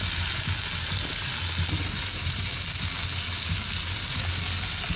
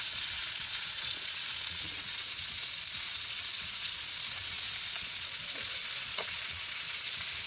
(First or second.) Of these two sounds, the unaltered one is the first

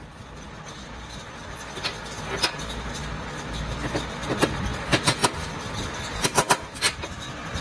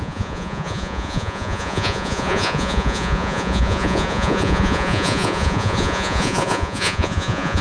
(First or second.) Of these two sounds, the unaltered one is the first